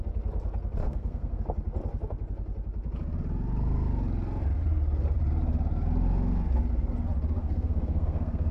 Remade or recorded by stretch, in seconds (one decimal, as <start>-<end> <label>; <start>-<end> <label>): 0.0-0.8 recorded; 0.8-1.4 remade; 1.4-7.4 recorded; 7.4-8.5 remade